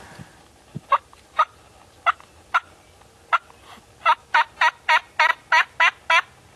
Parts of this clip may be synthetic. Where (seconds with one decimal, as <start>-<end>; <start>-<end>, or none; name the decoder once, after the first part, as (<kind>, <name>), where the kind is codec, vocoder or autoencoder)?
none